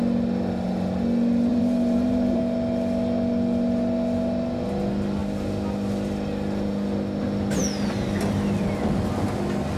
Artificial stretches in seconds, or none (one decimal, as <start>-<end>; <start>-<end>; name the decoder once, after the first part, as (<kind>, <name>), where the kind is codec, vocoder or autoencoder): 1.5-2.4 (vocoder, BigVGAN v2)